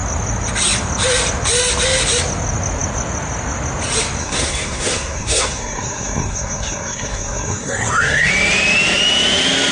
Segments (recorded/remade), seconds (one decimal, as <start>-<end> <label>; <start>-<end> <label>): 0.0-4.2 recorded; 4.2-8.3 remade; 8.3-9.7 recorded